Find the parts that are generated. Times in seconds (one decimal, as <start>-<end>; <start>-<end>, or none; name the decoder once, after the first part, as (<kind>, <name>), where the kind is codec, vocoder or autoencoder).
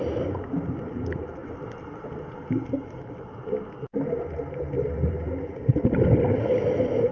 none